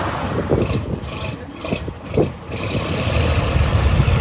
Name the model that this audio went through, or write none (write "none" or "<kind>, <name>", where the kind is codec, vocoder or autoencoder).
vocoder, BigVGAN v2